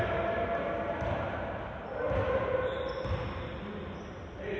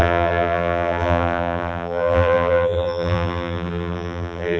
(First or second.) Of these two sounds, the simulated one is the second